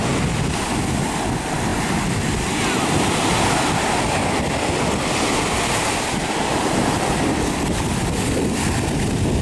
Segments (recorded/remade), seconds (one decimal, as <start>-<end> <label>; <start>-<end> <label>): 0.0-9.4 recorded